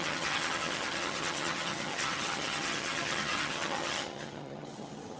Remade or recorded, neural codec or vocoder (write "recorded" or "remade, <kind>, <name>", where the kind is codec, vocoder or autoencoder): remade, vocoder, HiFi-GAN